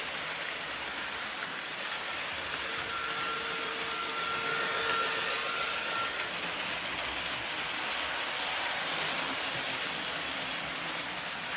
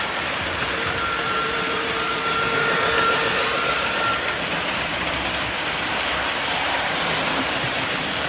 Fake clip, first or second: second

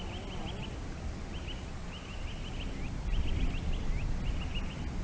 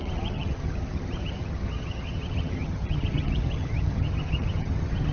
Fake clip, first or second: second